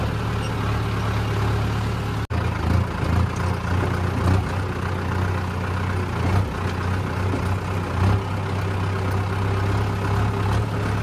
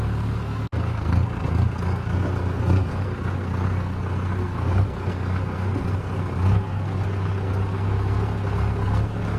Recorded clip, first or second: first